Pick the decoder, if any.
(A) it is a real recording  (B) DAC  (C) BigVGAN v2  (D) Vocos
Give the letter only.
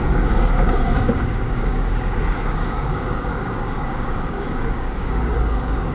B